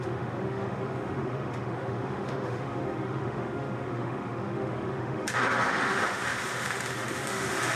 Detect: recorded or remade remade